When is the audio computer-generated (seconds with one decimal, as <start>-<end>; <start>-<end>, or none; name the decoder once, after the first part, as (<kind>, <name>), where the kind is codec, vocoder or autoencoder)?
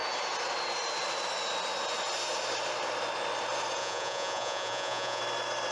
3.8-5.2 (vocoder, Vocos)